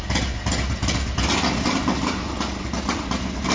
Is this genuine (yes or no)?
yes